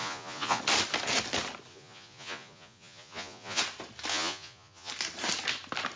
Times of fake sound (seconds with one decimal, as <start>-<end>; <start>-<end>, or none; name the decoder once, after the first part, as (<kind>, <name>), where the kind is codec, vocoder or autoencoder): 0.0-0.6 (vocoder, Vocos); 1.7-3.6; 4.1-4.9